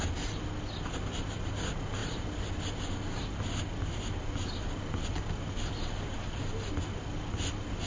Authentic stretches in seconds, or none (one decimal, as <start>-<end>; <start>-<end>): 0.0-7.9